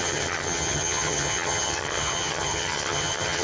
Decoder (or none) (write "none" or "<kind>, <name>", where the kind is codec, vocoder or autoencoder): vocoder, HiFi-GAN